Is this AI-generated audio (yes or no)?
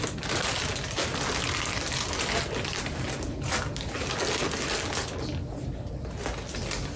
no